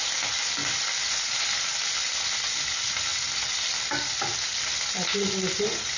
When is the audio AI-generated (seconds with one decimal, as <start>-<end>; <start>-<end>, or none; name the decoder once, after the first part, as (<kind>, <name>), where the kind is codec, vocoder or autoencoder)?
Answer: 0.6-1.4 (vocoder, BigVGAN v2)